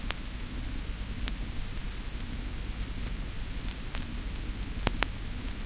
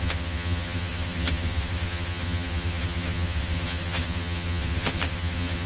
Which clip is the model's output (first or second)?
second